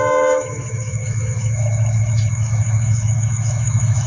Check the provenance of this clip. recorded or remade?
remade